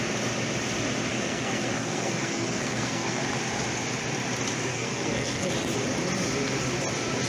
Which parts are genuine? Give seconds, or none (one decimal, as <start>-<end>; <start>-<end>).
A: 0.0-1.1; 3.2-4.7; 5.5-7.3